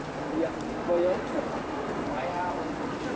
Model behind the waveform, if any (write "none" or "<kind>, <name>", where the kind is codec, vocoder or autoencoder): none